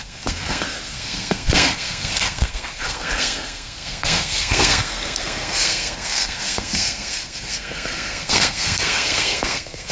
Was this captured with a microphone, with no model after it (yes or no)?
no